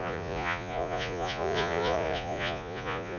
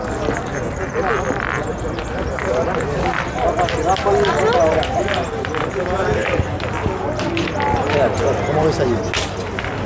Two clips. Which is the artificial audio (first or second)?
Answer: first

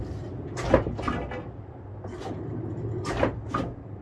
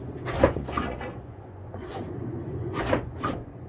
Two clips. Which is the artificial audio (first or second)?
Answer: second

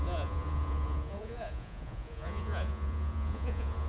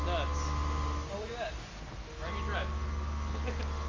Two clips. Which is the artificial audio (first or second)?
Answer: first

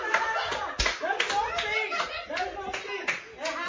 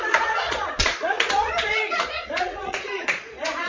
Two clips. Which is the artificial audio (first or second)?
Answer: second